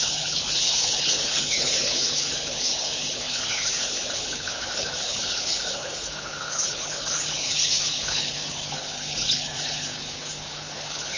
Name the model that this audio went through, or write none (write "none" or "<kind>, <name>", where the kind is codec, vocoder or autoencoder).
codec, HILCodec